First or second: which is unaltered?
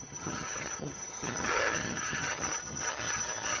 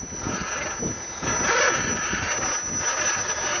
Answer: second